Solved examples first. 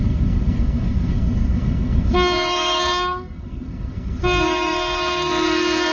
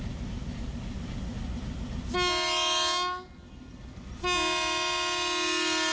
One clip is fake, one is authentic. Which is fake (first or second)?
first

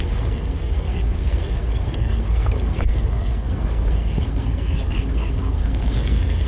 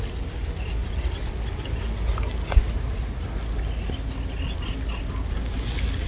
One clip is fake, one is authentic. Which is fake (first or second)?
first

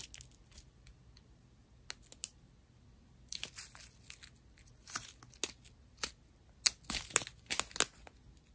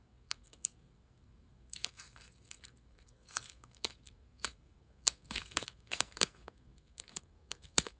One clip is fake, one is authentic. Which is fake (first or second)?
second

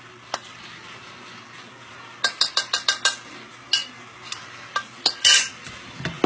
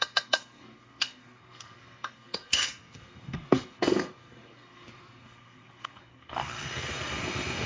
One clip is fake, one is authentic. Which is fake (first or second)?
second